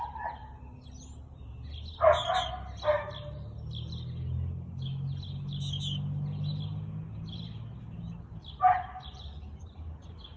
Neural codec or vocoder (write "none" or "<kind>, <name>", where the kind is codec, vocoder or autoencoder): none